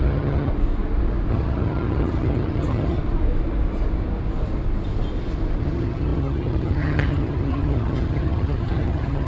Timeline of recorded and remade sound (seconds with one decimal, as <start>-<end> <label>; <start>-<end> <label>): 0.0-0.5 remade; 0.5-1.3 recorded; 1.3-3.0 remade; 3.0-5.6 recorded; 5.6-9.3 remade